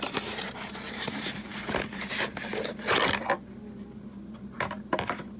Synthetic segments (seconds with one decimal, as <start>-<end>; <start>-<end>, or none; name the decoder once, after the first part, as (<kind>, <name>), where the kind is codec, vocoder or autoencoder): none